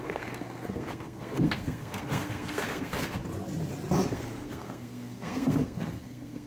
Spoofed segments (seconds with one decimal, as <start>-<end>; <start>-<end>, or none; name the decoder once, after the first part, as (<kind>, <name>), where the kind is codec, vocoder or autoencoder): 0.0-3.2 (codec, SNAC); 4.1-6.5

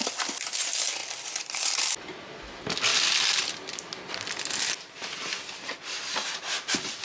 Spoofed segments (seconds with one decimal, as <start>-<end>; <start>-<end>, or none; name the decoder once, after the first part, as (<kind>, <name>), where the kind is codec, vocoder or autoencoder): none

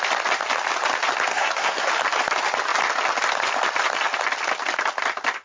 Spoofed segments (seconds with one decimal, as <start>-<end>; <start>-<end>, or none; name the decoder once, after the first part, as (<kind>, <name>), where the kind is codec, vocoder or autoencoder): 1.3-1.9 (codec, SNAC)

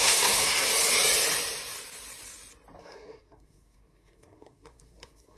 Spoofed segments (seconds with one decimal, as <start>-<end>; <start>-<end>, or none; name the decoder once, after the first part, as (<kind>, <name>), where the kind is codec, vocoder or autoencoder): 0.0-0.7 (codec, SNAC); 2.8-5.4